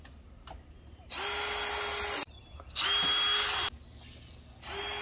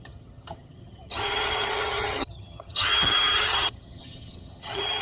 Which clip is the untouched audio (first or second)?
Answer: first